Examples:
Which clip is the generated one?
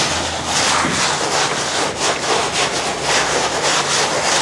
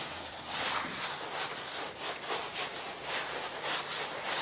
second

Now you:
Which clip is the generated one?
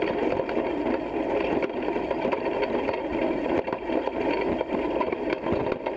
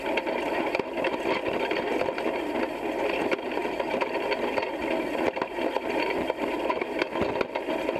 first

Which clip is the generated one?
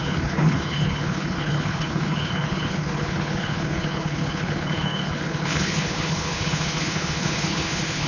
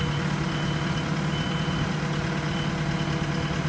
first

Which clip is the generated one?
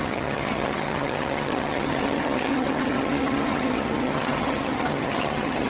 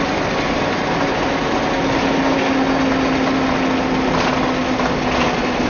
first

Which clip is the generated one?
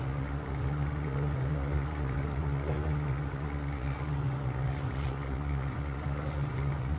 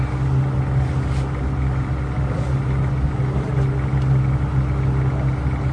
first